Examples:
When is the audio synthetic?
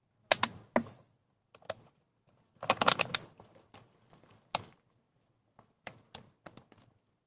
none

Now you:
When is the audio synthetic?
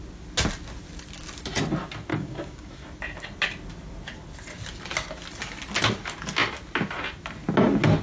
2.1-2.7 (codec, DAC)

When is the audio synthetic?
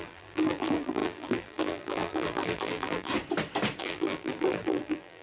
0.0-3.1 (vocoder, BigVGAN v2); 3.8-5.2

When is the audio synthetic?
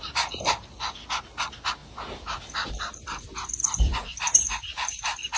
none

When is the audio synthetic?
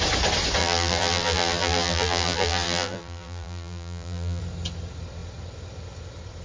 0.6-4.4 (vocoder, BigVGAN v2)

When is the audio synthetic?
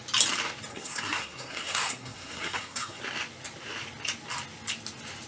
0.7-3.0 (codec, SNAC)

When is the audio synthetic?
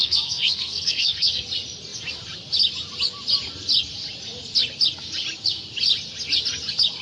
0.0-1.4 (codec, SNAC)